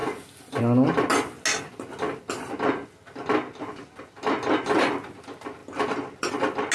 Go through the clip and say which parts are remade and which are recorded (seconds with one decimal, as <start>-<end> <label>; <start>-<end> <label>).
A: 0.0-5.6 recorded; 5.6-6.3 remade; 6.3-6.7 recorded